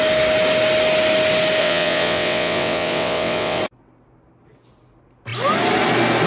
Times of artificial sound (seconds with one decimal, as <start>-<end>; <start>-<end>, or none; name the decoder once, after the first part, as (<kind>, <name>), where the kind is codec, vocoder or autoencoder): 1.6-3.6 (vocoder, WaveNeXt)